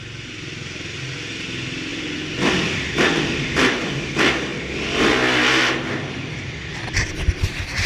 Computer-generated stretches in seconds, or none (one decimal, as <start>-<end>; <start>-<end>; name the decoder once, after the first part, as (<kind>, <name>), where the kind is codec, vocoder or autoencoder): 1.9-3.9 (vocoder, BigVGAN v2)